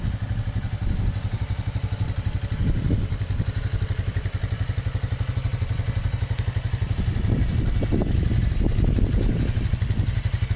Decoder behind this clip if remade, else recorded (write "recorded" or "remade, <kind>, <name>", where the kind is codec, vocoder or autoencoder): recorded